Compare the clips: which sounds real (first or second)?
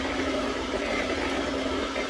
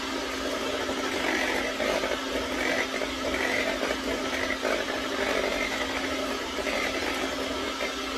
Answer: second